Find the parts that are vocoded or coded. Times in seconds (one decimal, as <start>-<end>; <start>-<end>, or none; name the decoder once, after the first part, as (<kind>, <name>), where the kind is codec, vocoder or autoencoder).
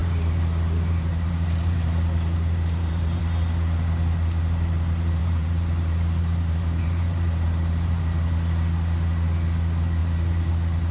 0.0-3.2 (vocoder, BigVGAN v2); 5.2-8.0; 10.0-10.5